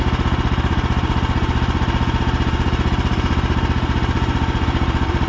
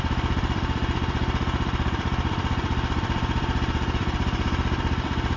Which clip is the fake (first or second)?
second